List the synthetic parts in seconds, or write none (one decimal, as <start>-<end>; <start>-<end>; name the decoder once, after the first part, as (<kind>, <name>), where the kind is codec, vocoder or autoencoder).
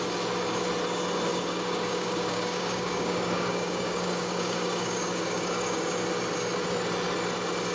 1.3-5.9 (codec, DAC)